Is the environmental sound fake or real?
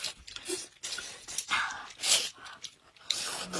real